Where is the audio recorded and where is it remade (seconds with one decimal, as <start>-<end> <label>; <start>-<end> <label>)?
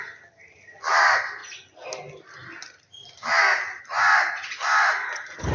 0.0-5.5 recorded